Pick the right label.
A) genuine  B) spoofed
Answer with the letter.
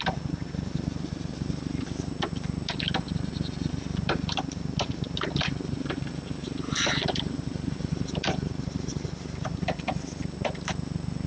A